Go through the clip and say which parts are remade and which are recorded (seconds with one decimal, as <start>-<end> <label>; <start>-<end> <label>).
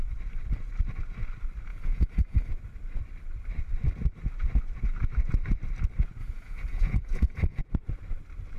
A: 0.0-1.7 recorded; 1.7-2.5 remade; 2.5-6.2 recorded; 6.2-7.6 remade; 7.6-8.6 recorded